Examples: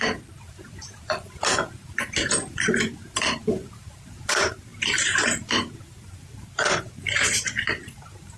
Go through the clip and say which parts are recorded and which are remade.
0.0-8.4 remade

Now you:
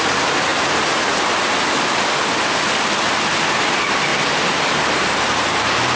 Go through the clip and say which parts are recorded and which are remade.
0.0-4.1 recorded; 4.1-4.8 remade; 4.8-6.0 recorded

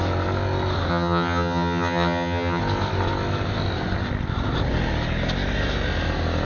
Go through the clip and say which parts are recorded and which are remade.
0.0-0.9 recorded; 0.9-2.6 remade; 2.6-6.4 recorded

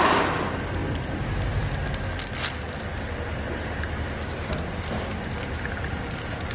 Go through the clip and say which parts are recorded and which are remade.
0.0-6.5 recorded